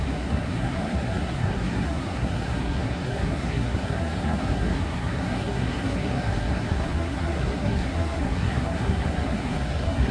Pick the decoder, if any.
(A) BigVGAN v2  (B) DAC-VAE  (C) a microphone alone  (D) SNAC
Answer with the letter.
D